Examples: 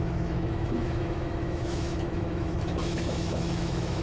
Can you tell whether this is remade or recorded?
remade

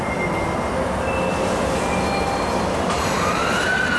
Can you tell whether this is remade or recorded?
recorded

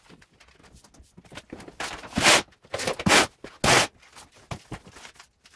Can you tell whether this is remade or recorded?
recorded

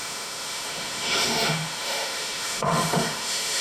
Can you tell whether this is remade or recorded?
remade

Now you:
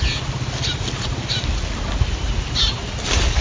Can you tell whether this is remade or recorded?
recorded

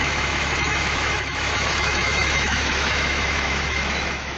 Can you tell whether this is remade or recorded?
remade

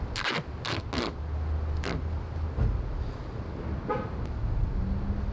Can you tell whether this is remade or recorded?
recorded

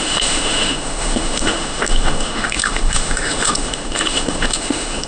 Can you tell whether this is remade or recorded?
remade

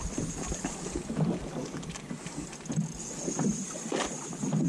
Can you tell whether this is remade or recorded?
recorded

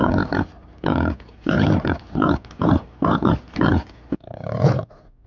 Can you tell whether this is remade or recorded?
recorded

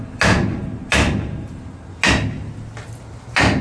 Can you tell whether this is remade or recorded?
recorded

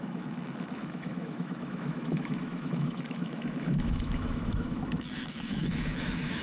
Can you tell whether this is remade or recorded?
remade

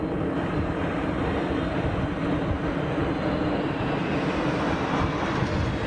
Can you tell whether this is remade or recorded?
recorded